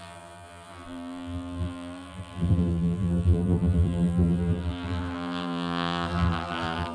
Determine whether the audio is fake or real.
fake